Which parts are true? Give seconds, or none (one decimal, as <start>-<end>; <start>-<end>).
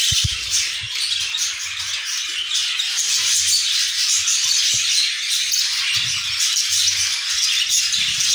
0.0-8.3